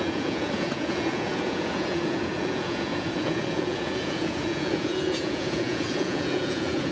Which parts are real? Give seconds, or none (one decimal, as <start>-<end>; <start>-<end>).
none